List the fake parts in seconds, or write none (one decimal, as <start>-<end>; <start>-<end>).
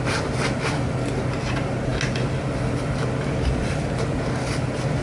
none